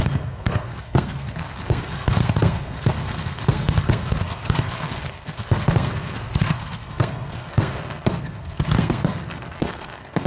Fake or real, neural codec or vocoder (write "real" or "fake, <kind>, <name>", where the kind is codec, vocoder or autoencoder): fake, codec, SNAC